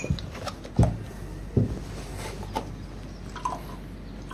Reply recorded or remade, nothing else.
recorded